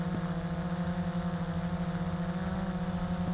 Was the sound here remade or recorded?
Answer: recorded